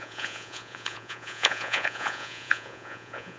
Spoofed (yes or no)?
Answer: yes